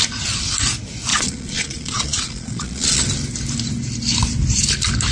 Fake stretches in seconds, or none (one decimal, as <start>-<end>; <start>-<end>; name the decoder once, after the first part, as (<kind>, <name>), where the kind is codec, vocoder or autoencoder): 1.1-3.0 (vocoder, Vocos)